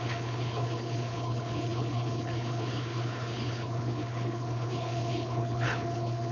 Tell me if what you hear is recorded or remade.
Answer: remade